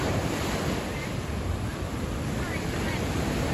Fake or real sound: fake